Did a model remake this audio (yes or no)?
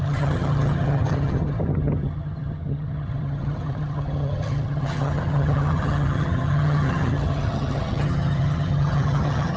yes